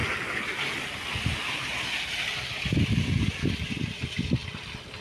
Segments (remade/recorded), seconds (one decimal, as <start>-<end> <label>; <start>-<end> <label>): 0.0-3.0 recorded; 3.0-4.4 remade; 4.4-5.0 recorded